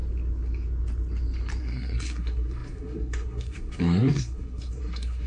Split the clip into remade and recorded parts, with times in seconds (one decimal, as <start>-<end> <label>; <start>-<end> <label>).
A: 0.0-1.6 recorded; 1.6-5.3 remade